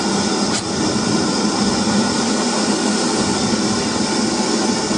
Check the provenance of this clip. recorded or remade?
recorded